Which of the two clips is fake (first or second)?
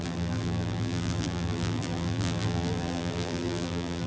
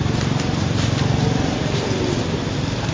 first